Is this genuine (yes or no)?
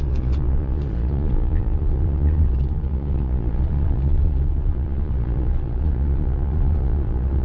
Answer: no